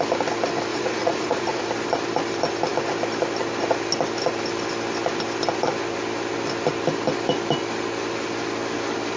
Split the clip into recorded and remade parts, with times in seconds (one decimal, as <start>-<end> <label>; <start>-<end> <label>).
0.0-0.7 recorded; 0.7-1.6 remade; 1.6-9.2 recorded